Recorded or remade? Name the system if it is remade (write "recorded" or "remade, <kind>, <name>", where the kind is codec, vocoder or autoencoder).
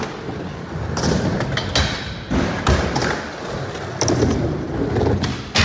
recorded